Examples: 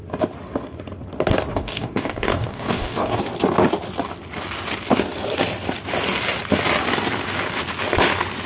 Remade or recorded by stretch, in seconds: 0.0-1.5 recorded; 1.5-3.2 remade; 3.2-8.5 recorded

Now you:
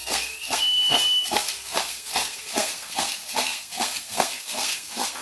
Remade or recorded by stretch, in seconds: 0.0-5.2 remade